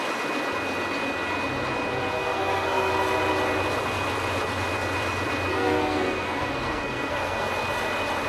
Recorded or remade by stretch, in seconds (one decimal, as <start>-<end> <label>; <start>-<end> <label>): 0.0-2.2 recorded; 2.2-2.9 remade; 2.9-5.5 recorded; 5.5-7.5 remade; 7.5-8.3 recorded